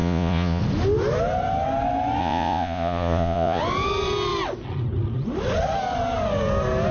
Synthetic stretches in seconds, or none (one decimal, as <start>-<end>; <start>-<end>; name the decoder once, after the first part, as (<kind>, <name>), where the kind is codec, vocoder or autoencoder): 0.0-0.6 (vocoder, Vocos); 2.2-3.6